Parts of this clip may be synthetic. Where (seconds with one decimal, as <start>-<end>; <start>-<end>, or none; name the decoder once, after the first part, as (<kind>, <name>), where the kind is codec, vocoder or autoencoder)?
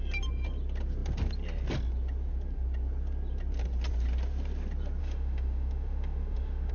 5.0-6.7 (autoencoder, DAC-VAE)